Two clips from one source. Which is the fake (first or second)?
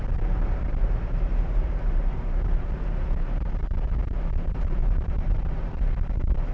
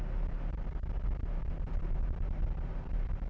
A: first